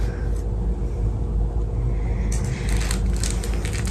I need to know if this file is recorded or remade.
recorded